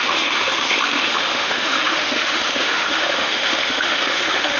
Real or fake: fake